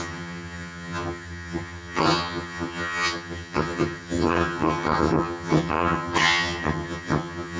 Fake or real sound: fake